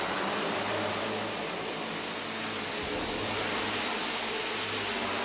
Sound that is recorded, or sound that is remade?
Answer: recorded